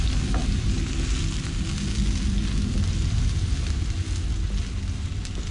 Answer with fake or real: real